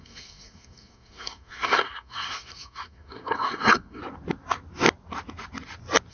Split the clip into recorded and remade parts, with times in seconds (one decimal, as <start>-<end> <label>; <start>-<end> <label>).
0.0-4.0 remade; 4.0-6.1 recorded